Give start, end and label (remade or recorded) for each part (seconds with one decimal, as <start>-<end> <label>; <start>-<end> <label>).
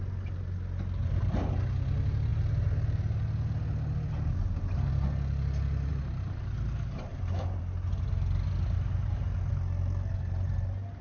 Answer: 0.0-7.1 recorded; 7.1-7.6 remade; 7.6-11.0 recorded